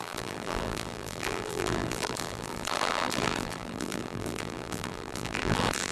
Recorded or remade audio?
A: remade